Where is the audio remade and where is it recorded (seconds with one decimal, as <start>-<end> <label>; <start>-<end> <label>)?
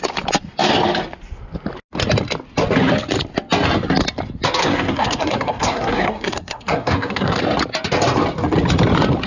0.0-4.6 recorded; 4.6-7.4 remade; 7.4-9.3 recorded